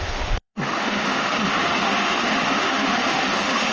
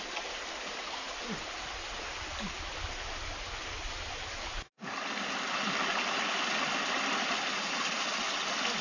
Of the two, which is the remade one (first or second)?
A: first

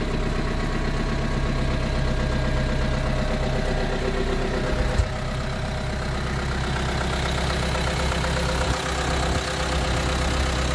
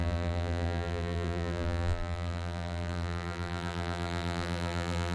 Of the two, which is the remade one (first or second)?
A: second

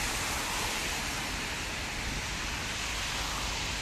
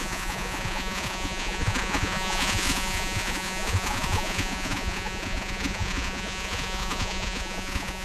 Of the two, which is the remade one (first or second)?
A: second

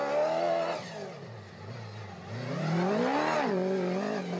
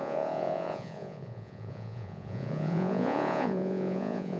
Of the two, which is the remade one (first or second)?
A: second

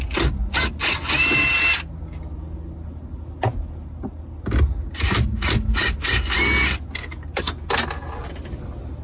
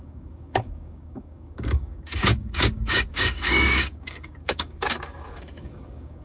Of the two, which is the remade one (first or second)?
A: second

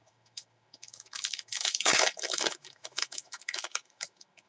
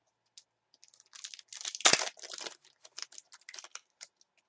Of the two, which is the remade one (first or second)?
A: first